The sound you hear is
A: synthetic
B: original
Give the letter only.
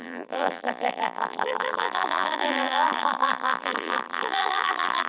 A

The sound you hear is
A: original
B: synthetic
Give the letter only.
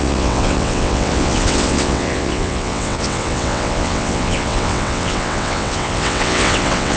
B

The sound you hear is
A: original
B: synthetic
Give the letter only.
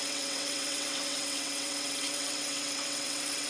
B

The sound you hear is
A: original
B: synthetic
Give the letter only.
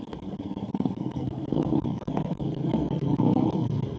B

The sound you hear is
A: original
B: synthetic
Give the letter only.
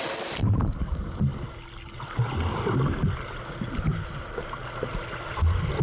A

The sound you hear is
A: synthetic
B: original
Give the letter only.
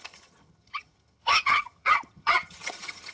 A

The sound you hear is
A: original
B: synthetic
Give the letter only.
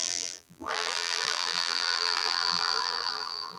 B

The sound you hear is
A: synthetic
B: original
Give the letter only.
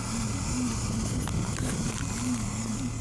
B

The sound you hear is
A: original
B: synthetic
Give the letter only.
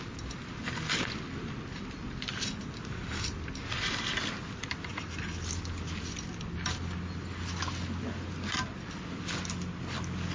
A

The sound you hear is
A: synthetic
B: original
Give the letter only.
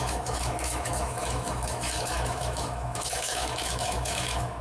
A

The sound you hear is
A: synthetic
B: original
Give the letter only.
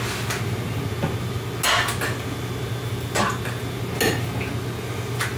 B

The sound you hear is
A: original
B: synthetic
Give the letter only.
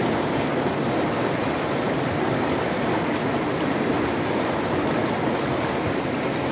A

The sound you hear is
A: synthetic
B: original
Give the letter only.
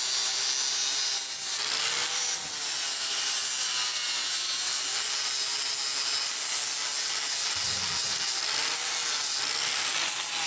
B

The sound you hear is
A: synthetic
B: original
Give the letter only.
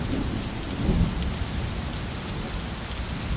B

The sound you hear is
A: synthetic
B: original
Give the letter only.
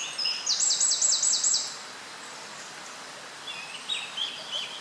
B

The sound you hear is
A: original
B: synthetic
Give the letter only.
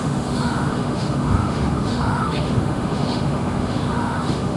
B